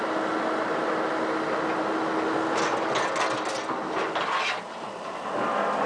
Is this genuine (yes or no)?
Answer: yes